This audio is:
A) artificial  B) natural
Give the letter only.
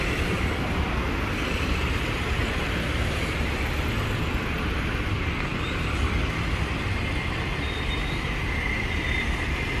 B